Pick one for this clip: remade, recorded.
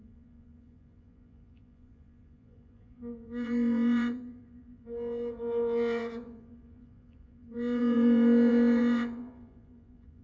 remade